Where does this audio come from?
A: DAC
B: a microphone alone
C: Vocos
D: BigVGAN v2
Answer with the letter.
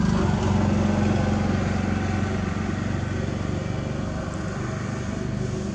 B